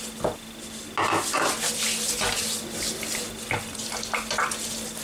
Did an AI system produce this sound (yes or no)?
no